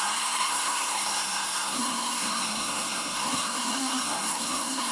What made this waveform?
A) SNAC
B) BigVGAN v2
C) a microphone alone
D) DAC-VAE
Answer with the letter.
A